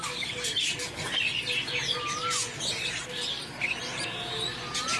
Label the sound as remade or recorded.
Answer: recorded